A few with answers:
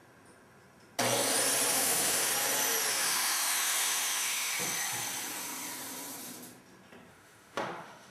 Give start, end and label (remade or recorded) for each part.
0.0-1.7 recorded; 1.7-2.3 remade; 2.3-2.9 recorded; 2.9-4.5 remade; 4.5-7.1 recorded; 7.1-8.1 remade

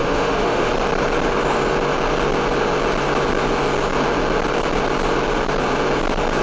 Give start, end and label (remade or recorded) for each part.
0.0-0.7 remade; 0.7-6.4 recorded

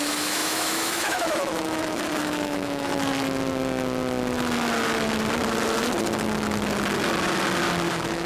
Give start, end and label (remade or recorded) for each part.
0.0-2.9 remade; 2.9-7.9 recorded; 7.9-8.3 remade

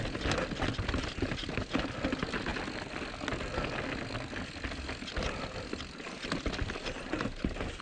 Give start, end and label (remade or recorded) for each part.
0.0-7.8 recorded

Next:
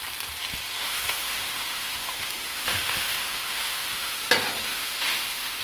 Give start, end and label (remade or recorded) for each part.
0.0-0.8 recorded; 0.8-4.2 remade; 4.2-4.7 recorded; 4.7-5.6 remade

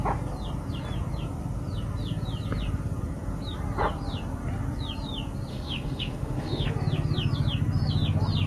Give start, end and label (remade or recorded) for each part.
0.0-5.5 recorded; 5.5-6.7 remade; 6.7-8.5 recorded

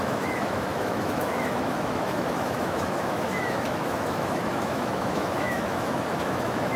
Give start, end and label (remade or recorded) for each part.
0.0-6.8 remade

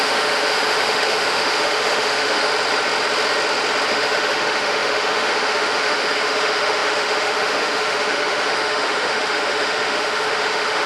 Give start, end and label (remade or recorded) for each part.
0.0-2.5 remade; 2.5-3.9 recorded; 3.9-10.9 remade